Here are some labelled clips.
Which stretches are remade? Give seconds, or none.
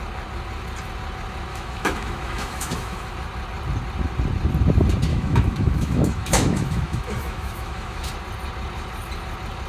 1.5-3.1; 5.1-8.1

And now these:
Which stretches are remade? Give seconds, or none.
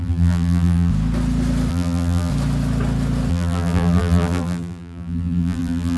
0.0-0.9; 1.7-2.3; 3.3-6.0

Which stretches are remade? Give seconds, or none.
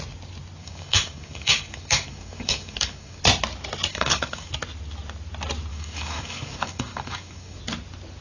0.6-3.2; 3.9-4.5; 5.7-7.6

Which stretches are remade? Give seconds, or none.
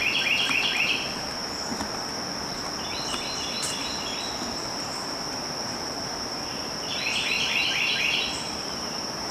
0.0-1.7; 2.8-9.3